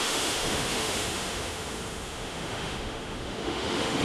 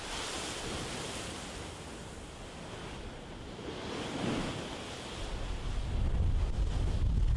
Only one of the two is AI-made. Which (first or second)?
first